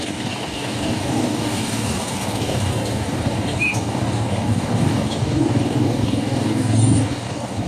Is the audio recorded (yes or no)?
no